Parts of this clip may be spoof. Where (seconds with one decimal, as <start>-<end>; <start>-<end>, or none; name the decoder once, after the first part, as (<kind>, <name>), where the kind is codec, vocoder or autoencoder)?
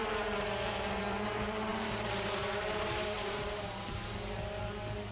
0.0-1.0 (vocoder, BigVGAN v2); 1.7-4.6